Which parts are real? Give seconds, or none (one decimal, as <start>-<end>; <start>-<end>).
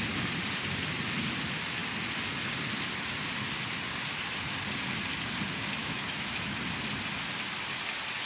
0.0-5.8; 6.6-8.3